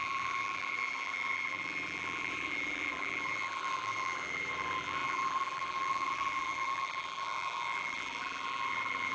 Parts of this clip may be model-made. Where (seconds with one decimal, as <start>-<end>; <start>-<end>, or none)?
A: 0.0-9.1